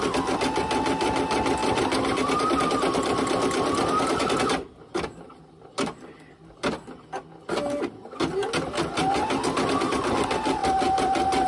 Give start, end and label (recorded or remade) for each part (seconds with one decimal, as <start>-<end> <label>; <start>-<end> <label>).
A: 0.0-1.6 recorded; 1.6-5.4 remade; 5.4-10.6 recorded; 10.6-11.5 remade